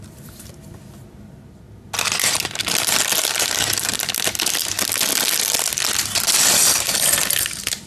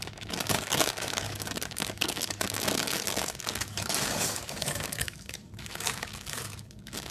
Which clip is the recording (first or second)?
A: first